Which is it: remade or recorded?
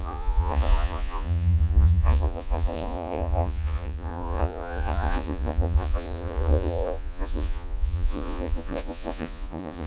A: remade